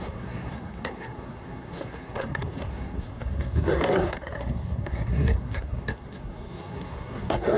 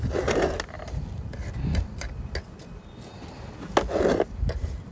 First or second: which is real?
second